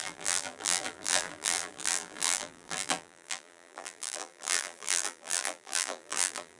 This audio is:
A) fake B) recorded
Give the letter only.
A